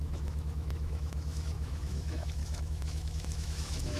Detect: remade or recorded remade